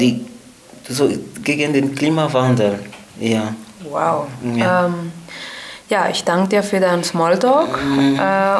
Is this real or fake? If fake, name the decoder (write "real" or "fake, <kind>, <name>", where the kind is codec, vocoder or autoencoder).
real